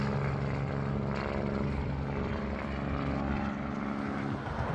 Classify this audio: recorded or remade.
recorded